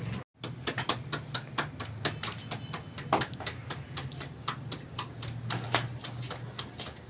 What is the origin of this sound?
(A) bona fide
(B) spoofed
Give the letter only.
A